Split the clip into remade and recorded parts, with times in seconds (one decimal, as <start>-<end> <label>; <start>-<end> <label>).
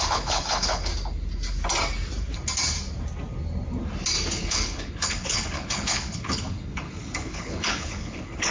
0.0-0.9 remade; 0.9-4.4 recorded; 4.4-8.5 remade